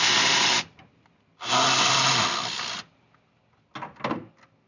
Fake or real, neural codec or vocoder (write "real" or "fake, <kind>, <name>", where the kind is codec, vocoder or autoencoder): real